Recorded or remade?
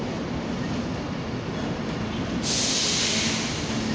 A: recorded